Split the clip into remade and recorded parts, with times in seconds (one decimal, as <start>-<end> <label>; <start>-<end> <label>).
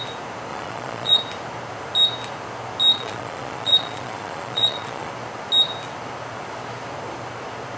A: 0.0-0.5 recorded; 0.5-1.2 remade; 1.2-2.9 recorded; 2.9-5.1 remade; 5.1-7.8 recorded